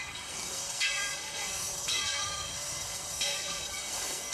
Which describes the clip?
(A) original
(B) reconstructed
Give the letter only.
B